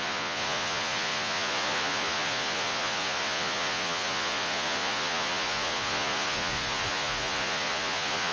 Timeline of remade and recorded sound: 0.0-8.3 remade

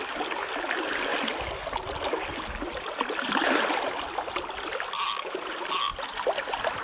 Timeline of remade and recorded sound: 0.0-6.8 recorded

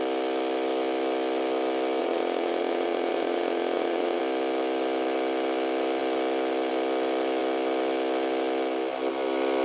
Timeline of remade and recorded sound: 0.0-2.0 recorded; 2.0-4.2 remade; 4.2-9.6 recorded

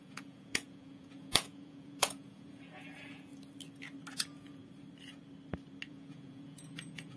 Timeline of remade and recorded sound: 0.0-3.3 remade; 3.3-4.1 recorded; 4.1-4.6 remade; 4.6-5.9 recorded; 5.9-7.2 remade

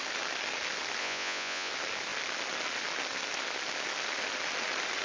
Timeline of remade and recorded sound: 0.0-1.0 recorded; 1.0-1.7 remade; 1.7-5.0 recorded